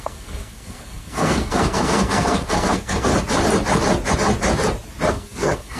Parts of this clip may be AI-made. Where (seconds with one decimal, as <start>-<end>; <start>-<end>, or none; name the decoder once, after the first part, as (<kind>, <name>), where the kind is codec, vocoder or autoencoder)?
0.0-3.1 (codec, SNAC); 5.1-5.8